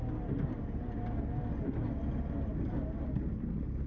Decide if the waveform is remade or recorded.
recorded